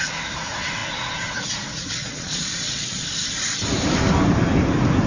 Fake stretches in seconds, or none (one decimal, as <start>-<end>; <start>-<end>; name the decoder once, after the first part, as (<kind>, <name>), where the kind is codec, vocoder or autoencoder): 2.0-3.2 (vocoder, Vocos)